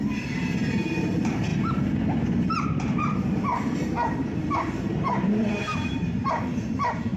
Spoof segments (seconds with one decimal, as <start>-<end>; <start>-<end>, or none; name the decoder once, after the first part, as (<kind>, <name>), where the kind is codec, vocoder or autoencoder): 0.0-1.5 (vocoder, BigVGAN v2); 2.4-7.2